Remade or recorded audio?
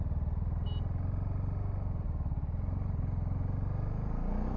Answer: recorded